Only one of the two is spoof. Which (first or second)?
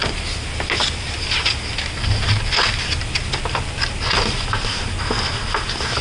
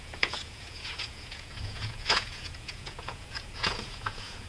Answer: second